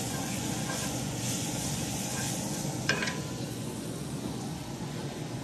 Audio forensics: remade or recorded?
remade